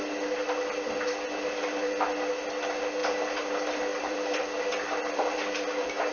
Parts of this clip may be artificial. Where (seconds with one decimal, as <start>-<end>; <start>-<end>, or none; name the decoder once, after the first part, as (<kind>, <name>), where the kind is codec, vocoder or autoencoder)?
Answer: 3.0-3.5 (vocoder, BigVGAN v2); 3.9-5.5